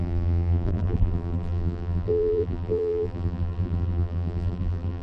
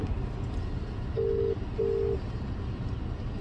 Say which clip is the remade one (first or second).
first